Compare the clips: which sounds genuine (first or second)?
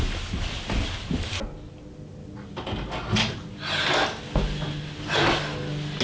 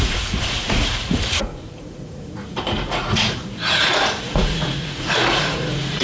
first